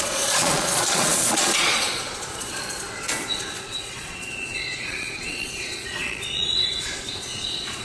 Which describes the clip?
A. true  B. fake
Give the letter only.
B